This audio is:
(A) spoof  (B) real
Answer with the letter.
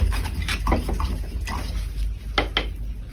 B